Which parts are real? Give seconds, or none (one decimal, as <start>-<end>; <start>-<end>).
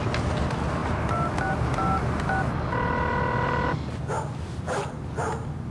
0.0-5.7